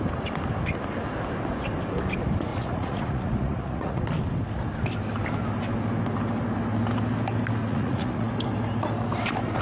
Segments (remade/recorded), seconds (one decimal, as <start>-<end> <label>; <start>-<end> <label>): 0.0-2.5 recorded; 2.5-4.0 remade; 4.0-7.6 recorded; 7.6-8.3 remade; 8.3-9.6 recorded